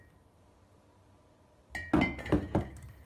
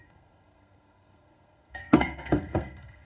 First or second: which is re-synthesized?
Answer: second